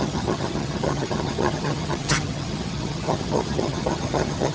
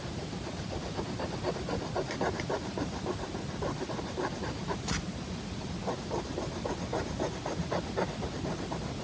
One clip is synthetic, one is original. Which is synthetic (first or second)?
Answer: first